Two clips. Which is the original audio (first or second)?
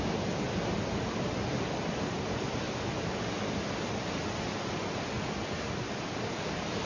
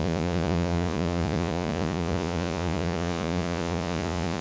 first